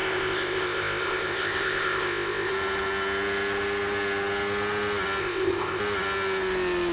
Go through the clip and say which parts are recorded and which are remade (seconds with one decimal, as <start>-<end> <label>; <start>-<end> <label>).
0.0-2.5 remade; 2.5-5.2 recorded; 5.2-5.8 remade; 5.8-6.9 recorded